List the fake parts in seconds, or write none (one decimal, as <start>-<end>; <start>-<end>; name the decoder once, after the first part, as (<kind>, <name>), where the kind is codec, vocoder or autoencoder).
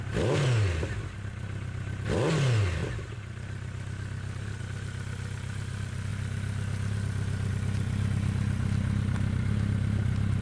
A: none